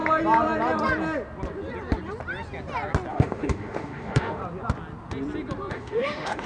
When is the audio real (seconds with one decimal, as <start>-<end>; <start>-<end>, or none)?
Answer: 0.0-3.1; 4.4-5.7